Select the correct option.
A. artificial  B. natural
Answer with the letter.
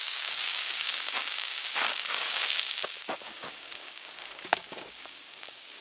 A